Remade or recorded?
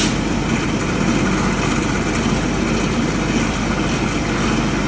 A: recorded